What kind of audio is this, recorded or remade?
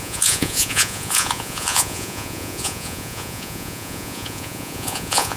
remade